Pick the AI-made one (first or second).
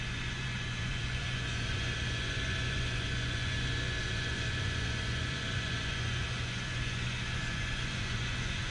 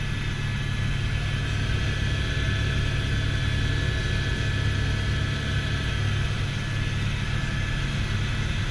first